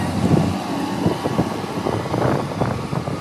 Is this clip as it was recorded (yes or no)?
yes